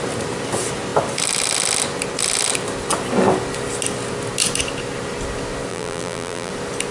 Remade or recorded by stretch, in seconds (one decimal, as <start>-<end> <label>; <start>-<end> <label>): 0.0-5.7 recorded; 5.7-6.5 remade; 6.5-6.9 recorded